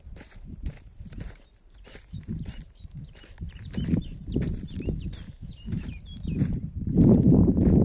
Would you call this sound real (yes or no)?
no